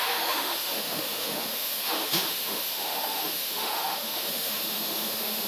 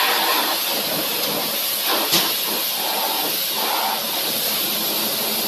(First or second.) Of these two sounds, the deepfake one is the first